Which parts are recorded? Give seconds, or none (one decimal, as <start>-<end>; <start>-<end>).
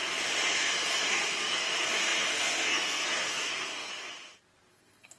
0.0-0.5; 3.9-4.7